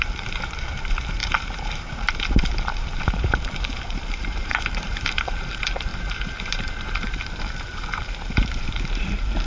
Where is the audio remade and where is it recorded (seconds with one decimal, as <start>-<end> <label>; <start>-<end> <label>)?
0.0-9.5 remade